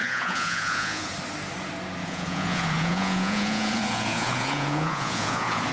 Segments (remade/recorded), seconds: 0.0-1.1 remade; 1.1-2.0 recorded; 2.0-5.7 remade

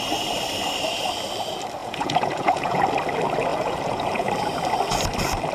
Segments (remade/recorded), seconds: 0.0-1.8 recorded; 1.8-2.8 remade; 2.8-3.5 recorded; 3.5-4.3 remade; 4.3-5.5 recorded

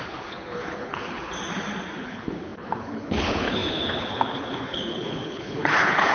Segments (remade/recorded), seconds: 0.0-1.3 remade; 1.3-2.0 recorded; 2.0-6.1 remade

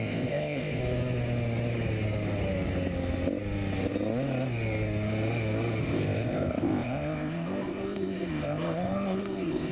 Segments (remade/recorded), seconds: 0.0-0.8 remade; 0.8-5.8 recorded; 5.8-9.7 remade

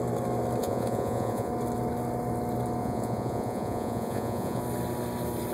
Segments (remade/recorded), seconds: 0.0-0.6 recorded; 0.6-1.5 remade; 1.5-2.8 recorded; 2.8-4.6 remade; 4.6-5.5 recorded

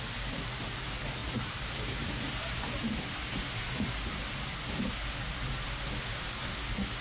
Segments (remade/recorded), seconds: 0.0-1.2 recorded; 1.2-5.2 remade; 5.2-7.0 recorded